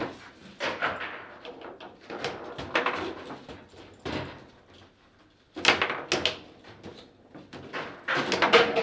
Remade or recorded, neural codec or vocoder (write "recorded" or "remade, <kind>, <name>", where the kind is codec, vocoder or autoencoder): recorded